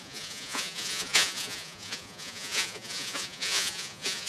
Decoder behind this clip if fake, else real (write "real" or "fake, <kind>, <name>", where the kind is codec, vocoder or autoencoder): fake, vocoder, Vocos